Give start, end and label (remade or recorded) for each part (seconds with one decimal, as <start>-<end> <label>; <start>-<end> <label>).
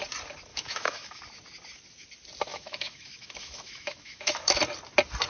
0.0-0.5 recorded; 0.5-1.2 remade; 1.2-2.5 recorded; 2.5-4.6 remade; 4.6-5.3 recorded